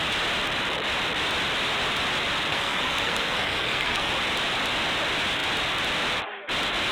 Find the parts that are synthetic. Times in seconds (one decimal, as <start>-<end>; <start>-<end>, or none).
2.5-4.1